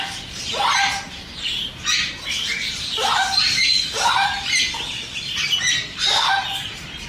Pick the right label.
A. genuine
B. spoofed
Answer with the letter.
A